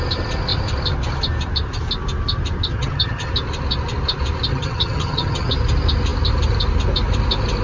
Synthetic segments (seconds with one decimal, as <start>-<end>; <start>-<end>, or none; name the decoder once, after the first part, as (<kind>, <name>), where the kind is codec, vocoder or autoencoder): 2.7-3.3 (vocoder, HiFi-GAN); 4.5-5.5